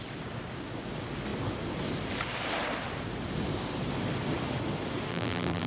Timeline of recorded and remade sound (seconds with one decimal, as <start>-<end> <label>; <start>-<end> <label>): 0.0-5.1 recorded; 5.1-5.7 remade